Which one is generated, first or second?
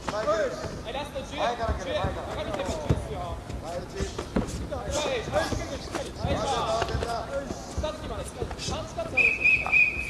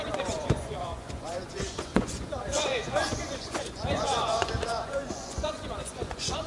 second